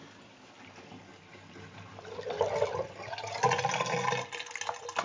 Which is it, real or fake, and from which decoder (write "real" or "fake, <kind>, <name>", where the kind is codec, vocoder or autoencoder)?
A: real